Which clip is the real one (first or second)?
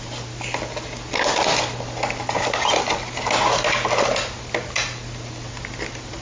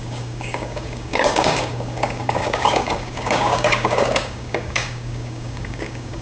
first